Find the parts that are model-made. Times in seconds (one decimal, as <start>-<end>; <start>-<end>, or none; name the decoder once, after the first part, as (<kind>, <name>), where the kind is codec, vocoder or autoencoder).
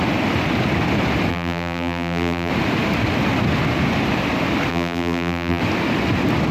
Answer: 1.3-2.5 (vocoder, BigVGAN v2); 4.7-5.6